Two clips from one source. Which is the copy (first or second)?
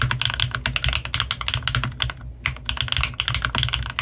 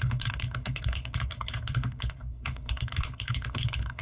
second